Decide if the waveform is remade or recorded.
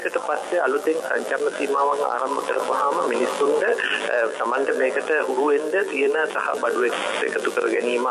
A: remade